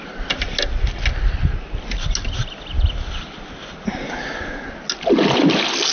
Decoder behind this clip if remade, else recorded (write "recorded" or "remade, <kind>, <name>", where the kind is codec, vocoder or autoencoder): recorded